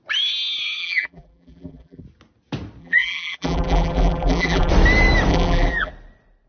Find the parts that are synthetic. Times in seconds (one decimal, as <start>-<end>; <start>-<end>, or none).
0.8-2.0; 2.8-4.7; 5.3-5.9